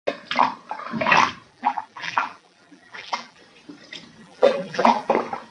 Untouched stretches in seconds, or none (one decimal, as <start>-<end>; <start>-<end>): 0.0-1.5; 3.4-4.2; 5.1-5.5